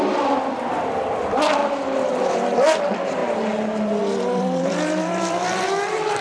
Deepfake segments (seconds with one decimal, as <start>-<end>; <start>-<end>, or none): 0.0-1.6; 2.1-3.2; 4.0-6.2